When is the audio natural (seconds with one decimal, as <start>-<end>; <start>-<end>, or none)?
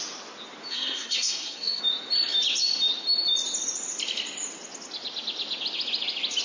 0.0-0.7; 1.8-6.4